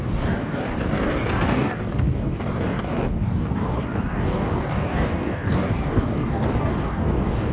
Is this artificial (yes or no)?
yes